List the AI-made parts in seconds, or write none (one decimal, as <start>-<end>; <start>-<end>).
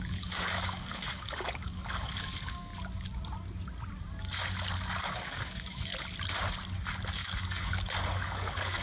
0.0-2.7; 5.0-5.9; 7.1-8.8